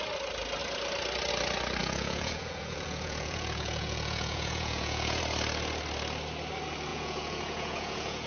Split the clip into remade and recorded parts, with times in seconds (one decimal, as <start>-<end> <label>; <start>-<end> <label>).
0.0-1.8 recorded; 1.8-5.2 remade; 5.2-6.9 recorded; 6.9-8.3 remade